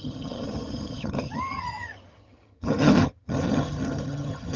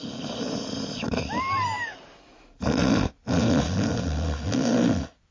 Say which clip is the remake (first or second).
first